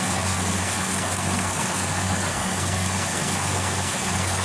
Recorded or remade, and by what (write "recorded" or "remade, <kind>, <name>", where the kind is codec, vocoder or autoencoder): remade, codec, SNAC